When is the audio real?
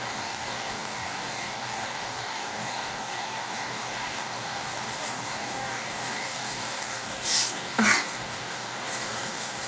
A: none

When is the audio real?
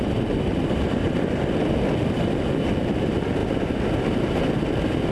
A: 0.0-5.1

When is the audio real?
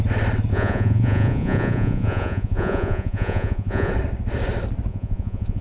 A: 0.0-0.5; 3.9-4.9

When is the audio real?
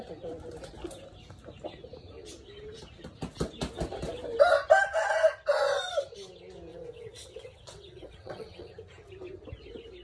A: 0.0-6.7; 8.7-10.0